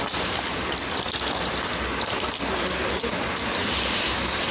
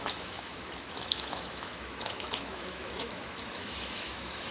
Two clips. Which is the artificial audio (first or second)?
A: second